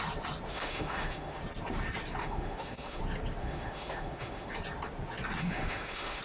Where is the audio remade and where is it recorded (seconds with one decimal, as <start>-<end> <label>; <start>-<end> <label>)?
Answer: 0.0-0.5 recorded; 0.5-1.4 remade; 1.4-2.2 recorded; 2.2-3.0 remade; 3.0-3.4 recorded; 3.4-4.5 remade; 4.5-5.4 recorded; 5.4-6.2 remade